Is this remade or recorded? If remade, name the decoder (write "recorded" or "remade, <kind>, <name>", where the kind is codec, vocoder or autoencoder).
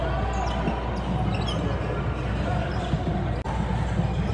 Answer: recorded